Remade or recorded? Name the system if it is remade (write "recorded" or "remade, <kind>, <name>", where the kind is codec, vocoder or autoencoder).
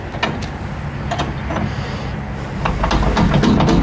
recorded